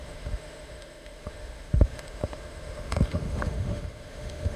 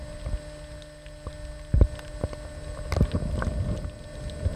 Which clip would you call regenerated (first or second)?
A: first